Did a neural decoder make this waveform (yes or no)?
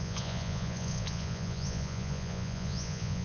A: yes